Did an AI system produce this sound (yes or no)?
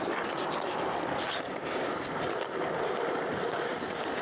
yes